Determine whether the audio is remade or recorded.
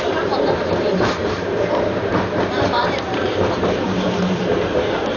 remade